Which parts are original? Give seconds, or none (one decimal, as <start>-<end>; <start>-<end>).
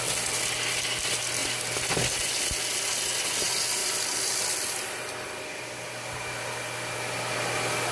0.0-7.9